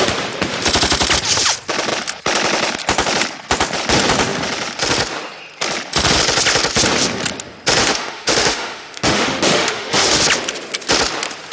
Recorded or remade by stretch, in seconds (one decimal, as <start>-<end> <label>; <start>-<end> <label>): 0.0-7.8 recorded; 7.8-10.2 remade; 10.2-11.5 recorded